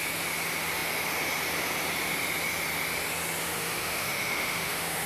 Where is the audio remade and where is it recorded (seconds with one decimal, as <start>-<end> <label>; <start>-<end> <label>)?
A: 0.0-3.4 recorded; 3.4-5.1 remade